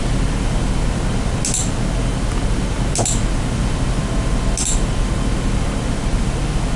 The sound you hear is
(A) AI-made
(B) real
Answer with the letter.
B